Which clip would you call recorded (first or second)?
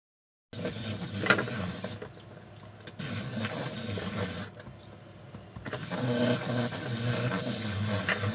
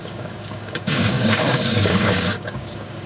first